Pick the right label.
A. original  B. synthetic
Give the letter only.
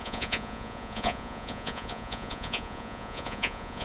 B